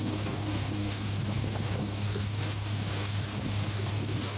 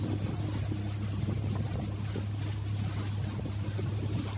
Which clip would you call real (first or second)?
second